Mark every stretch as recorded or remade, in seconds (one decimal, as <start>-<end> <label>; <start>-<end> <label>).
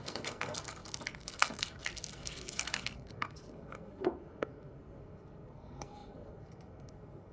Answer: 0.0-7.3 remade